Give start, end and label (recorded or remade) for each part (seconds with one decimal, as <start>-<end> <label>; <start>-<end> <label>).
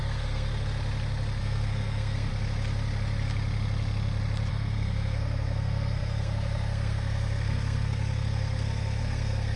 0.0-0.5 remade; 0.5-1.4 recorded; 1.4-2.3 remade; 2.3-4.5 recorded; 4.5-9.6 remade